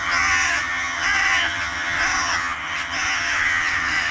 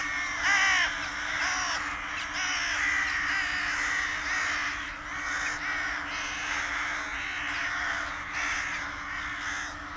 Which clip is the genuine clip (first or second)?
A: second